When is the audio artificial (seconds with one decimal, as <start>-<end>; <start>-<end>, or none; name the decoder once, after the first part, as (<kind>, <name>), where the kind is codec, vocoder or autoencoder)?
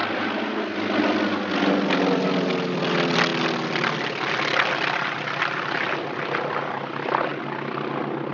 none